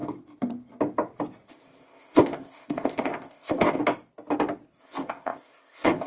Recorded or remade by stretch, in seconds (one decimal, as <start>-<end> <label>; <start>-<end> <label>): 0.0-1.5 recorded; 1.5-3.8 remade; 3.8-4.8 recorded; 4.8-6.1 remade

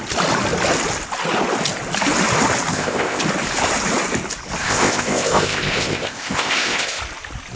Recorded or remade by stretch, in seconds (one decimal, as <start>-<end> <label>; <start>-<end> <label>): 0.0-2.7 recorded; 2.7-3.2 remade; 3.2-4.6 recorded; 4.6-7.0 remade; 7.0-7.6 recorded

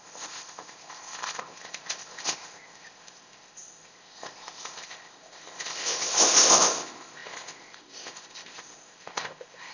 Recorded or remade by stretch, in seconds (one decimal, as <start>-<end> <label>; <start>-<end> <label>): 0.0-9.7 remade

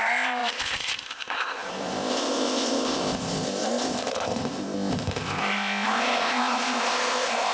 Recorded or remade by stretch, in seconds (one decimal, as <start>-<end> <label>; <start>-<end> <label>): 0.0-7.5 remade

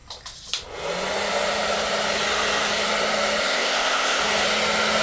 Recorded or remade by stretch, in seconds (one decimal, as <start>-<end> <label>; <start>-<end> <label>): 0.0-3.4 recorded; 3.4-4.2 remade; 4.2-5.0 recorded

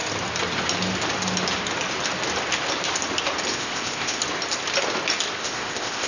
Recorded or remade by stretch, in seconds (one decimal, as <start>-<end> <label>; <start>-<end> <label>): 0.0-3.5 recorded; 3.5-4.2 remade; 4.2-5.4 recorded; 5.4-6.1 remade